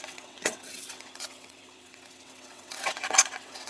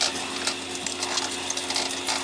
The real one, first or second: second